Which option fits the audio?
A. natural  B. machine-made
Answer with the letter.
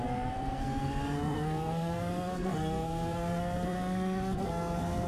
B